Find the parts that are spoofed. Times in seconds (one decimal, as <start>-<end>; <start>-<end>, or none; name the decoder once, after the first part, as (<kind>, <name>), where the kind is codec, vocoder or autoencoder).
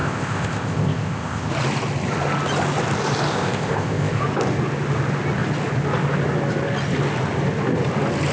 0.0-1.5 (codec, ZipCodec); 3.3-4.2